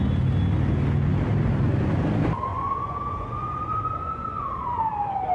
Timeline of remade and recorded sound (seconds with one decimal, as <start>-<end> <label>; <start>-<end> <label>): 0.0-2.5 recorded; 2.5-4.8 remade; 4.8-5.3 recorded